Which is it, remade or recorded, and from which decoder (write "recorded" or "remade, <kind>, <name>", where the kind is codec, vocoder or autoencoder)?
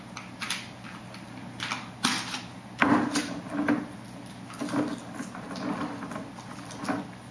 recorded